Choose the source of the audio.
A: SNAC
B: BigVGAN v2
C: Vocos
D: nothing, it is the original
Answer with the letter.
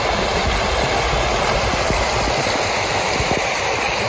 D